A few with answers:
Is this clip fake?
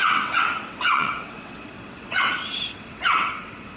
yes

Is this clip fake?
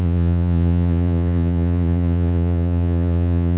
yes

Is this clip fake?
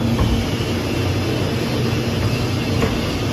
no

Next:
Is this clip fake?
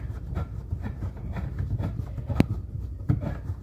yes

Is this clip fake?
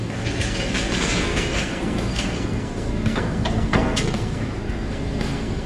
yes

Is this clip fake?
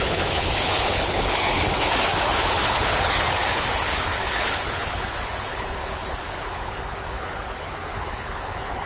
yes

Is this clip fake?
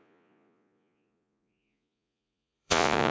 yes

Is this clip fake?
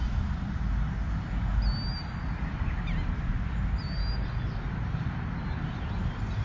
no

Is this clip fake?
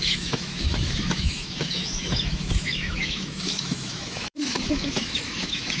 yes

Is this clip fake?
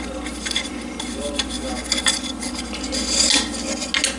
no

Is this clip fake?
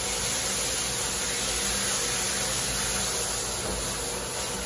no